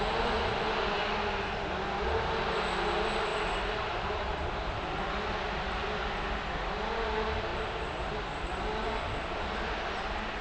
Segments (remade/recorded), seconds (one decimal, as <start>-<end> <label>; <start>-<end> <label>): 0.0-3.3 recorded; 3.3-4.7 remade; 4.7-7.5 recorded; 7.5-8.1 remade; 8.1-10.4 recorded